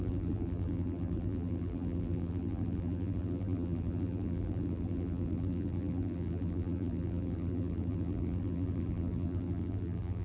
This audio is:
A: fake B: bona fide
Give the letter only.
A